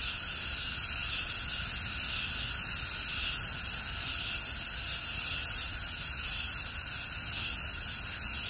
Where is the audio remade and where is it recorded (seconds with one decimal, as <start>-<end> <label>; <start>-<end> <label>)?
0.0-4.8 recorded; 4.8-6.3 remade; 6.3-8.5 recorded